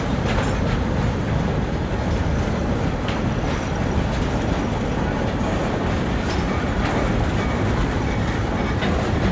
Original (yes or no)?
yes